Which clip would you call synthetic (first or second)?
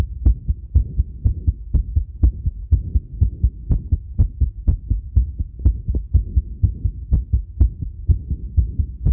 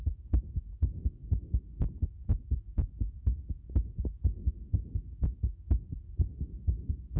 second